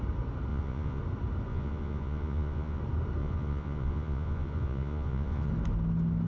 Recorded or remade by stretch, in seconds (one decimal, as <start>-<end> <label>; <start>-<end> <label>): 0.0-0.5 recorded; 0.5-1.0 remade; 1.0-1.5 recorded; 1.5-2.8 remade; 2.8-3.2 recorded; 3.2-5.5 remade; 5.5-6.3 recorded

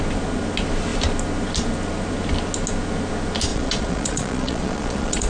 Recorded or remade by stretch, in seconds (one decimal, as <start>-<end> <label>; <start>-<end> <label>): 0.0-3.5 recorded; 3.5-5.3 remade

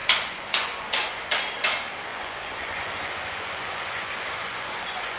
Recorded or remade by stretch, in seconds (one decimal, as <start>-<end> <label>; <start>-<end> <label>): 0.0-1.4 remade; 1.4-2.1 recorded; 2.1-5.2 remade

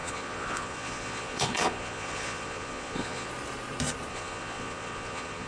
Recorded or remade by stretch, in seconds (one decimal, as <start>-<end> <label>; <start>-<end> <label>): 0.0-3.3 remade; 3.3-4.1 recorded; 4.1-5.5 remade

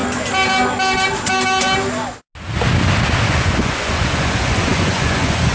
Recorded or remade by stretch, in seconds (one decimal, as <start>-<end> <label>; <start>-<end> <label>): 0.0-3.3 recorded; 3.3-5.5 remade

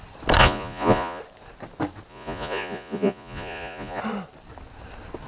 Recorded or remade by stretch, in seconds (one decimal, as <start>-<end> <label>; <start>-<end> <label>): 0.0-0.4 recorded; 0.4-1.2 remade; 1.2-2.1 recorded; 2.1-4.0 remade; 4.0-5.3 recorded

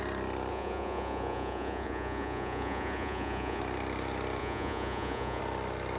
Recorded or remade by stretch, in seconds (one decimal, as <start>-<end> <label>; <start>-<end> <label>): 0.0-0.5 recorded; 0.5-3.6 remade; 3.6-4.4 recorded; 4.4-5.4 remade; 5.4-6.0 recorded